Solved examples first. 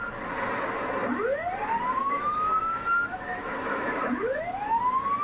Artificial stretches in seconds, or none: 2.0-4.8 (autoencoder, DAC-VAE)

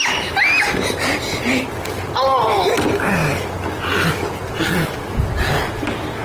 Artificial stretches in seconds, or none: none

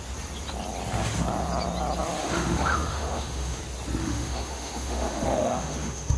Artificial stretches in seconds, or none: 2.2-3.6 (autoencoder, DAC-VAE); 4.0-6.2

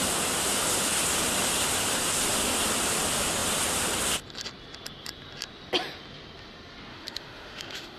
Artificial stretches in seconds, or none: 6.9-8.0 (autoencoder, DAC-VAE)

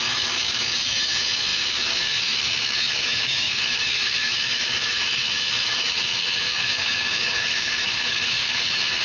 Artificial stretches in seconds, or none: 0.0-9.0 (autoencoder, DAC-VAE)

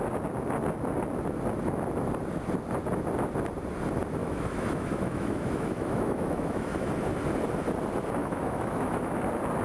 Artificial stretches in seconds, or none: 4.2-6.9 (autoencoder, DAC-VAE); 8.2-9.2

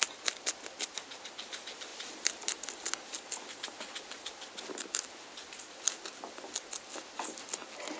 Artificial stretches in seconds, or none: none

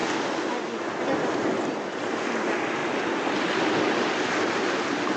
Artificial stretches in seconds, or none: none